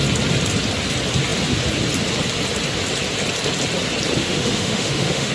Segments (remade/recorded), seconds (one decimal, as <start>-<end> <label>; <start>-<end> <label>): 0.0-4.2 recorded; 4.2-5.3 remade